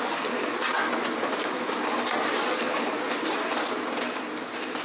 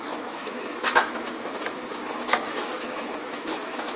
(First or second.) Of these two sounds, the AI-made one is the second